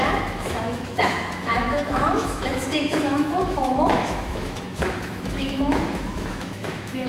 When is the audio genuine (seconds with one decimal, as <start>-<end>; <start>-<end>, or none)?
none